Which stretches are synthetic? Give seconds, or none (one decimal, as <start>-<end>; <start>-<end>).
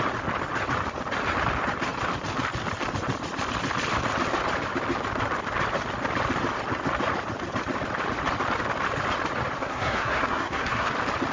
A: 9.6-10.9